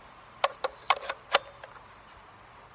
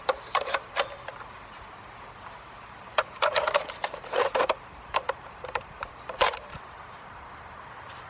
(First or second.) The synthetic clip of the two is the second